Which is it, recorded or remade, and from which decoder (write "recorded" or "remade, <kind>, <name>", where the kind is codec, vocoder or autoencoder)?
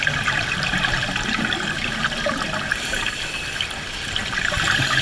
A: recorded